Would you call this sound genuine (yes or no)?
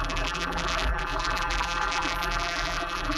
no